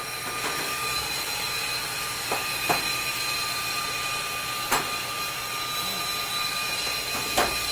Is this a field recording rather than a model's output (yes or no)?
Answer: yes